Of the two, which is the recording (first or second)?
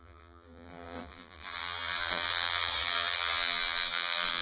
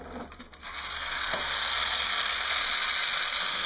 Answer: second